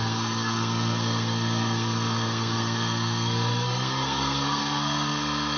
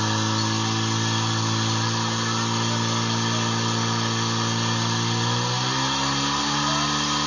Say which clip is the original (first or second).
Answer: second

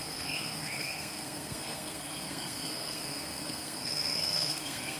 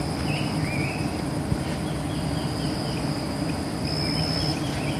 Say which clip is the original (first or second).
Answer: second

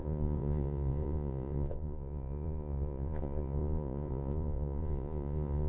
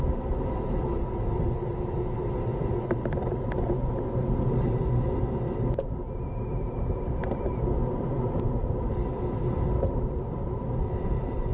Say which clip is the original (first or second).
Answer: second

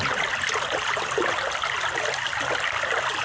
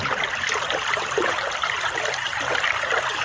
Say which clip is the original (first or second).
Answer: first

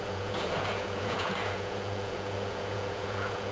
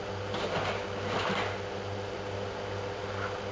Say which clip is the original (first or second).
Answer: second